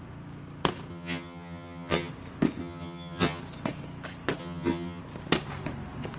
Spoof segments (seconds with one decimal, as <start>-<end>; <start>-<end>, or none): 0.9-2.1; 2.6-3.4; 4.4-5.0